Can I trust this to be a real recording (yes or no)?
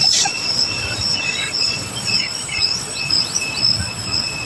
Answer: no